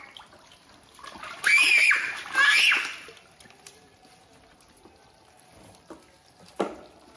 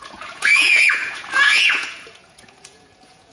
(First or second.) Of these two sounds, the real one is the first